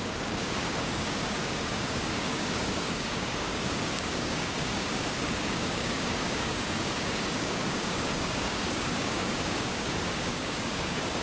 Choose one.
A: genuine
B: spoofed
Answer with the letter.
B